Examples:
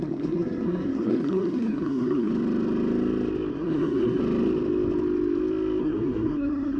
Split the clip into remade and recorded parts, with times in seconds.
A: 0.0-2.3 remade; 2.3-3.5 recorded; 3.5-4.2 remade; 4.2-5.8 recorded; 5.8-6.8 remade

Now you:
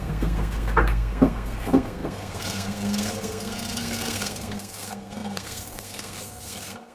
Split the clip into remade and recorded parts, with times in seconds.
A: 0.0-6.9 remade

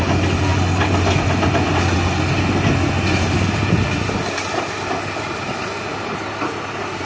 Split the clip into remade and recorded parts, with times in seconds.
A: 0.0-7.1 recorded